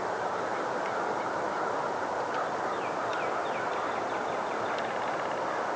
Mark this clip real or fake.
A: real